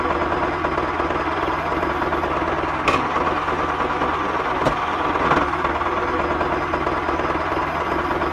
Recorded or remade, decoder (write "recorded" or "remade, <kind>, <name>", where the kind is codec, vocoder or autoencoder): recorded